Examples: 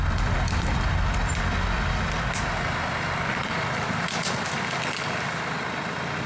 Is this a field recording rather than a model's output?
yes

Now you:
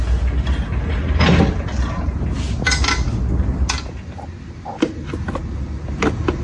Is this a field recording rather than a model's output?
yes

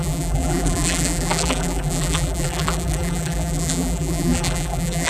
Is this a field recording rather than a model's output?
no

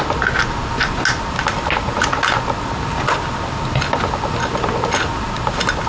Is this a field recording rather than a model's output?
yes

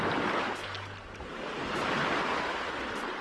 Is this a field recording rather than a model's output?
yes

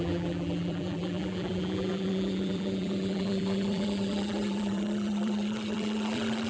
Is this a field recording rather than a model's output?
no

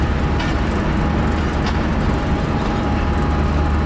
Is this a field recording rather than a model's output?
yes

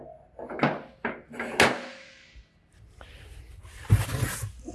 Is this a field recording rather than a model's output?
yes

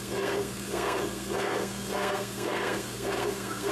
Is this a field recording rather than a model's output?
no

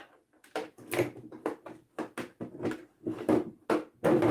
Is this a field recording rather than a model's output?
yes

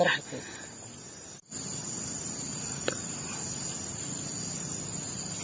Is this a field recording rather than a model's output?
yes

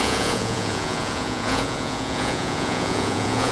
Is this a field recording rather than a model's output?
no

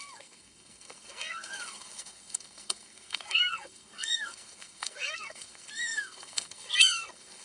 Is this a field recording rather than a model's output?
no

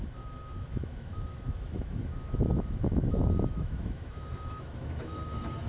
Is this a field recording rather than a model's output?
no